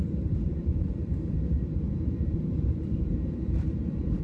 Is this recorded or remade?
remade